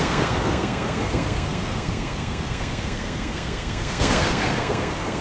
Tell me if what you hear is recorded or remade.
remade